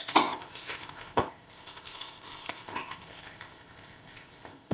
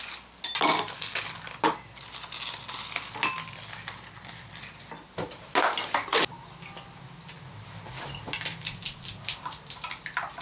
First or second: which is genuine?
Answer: second